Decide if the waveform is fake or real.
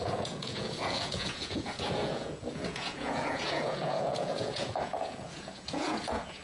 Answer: fake